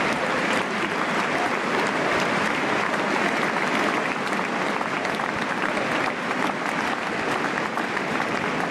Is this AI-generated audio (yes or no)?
no